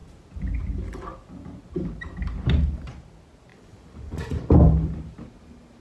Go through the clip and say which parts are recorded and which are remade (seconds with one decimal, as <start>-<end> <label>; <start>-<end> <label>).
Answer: 0.0-3.5 recorded; 3.5-4.4 remade; 4.4-5.8 recorded